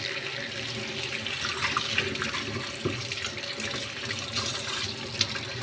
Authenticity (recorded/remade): recorded